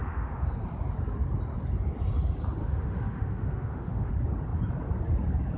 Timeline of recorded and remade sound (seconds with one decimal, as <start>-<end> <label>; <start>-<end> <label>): 0.0-0.5 remade; 0.5-2.6 recorded; 2.6-4.1 remade; 4.1-5.6 recorded